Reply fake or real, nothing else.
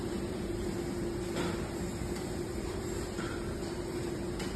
fake